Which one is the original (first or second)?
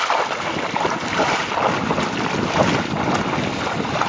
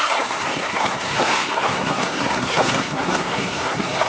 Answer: first